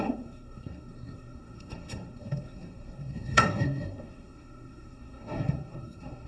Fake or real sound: fake